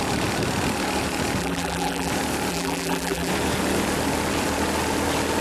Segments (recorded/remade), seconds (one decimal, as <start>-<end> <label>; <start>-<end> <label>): 0.0-1.4 recorded; 1.4-2.1 remade; 2.1-2.5 recorded; 2.5-3.3 remade; 3.3-5.4 recorded